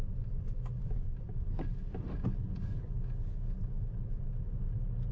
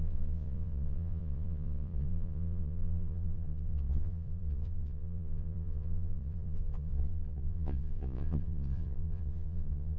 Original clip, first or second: first